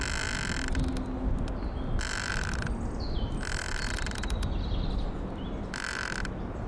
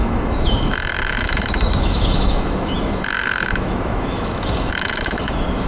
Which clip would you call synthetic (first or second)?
second